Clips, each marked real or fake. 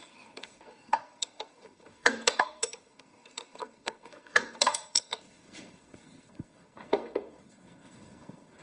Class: fake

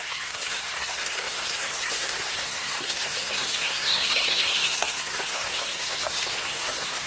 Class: fake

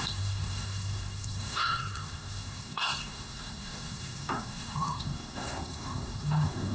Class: fake